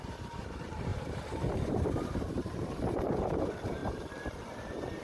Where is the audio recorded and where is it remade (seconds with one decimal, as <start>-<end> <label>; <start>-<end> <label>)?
0.0-5.0 remade